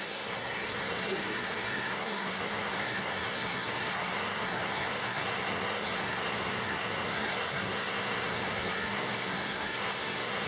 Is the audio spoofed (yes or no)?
yes